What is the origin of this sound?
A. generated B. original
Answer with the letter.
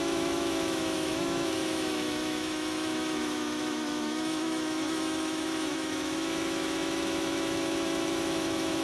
A